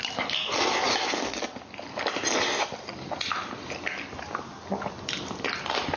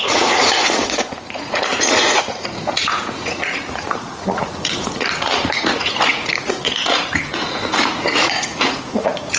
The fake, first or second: second